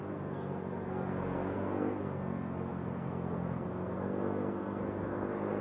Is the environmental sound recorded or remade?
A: remade